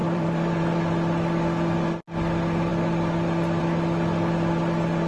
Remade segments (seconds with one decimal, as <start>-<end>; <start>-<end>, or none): 0.0-0.8